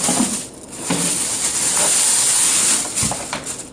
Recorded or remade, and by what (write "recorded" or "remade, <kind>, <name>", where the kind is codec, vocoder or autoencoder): recorded